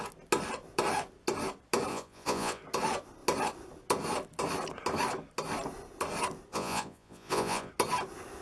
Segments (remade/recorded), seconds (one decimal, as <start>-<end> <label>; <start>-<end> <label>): 0.0-1.9 recorded; 1.9-2.6 remade; 2.6-6.5 recorded; 6.5-7.7 remade; 7.7-8.4 recorded